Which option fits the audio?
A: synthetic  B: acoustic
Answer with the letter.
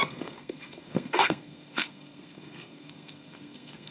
A